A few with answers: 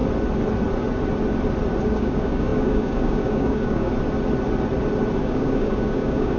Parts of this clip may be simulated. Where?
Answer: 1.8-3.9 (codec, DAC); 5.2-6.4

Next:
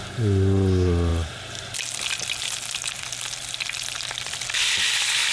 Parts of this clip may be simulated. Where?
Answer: none

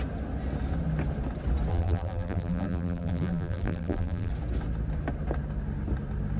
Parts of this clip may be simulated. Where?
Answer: 1.7-4.3 (vocoder, BigVGAN v2)

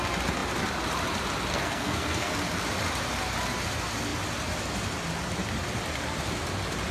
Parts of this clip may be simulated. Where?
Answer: 1.5-2.3 (codec, SNAC)

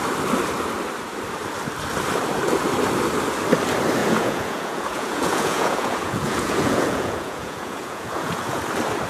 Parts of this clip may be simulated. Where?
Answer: 4.0-8.6 (vocoder, Vocos)

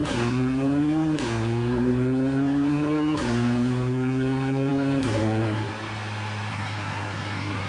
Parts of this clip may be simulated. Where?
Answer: 0.0-5.7 (codec, SNAC); 6.5-7.7

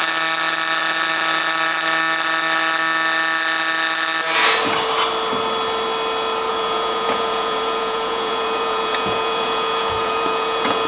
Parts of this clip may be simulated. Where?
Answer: 6.5-10.9 (vocoder, Vocos)

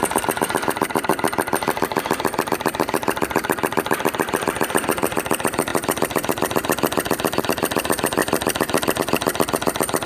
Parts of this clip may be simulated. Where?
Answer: 0.0-1.1 (vocoder, BigVGAN v2); 2.5-10.1